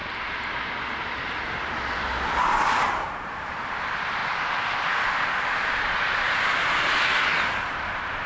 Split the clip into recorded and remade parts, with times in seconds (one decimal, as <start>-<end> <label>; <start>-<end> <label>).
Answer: 0.0-2.8 recorded; 2.8-4.2 remade; 4.2-5.7 recorded; 5.7-8.3 remade